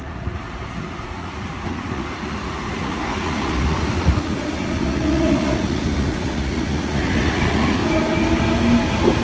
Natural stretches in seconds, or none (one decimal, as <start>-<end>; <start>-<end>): 7.8-9.2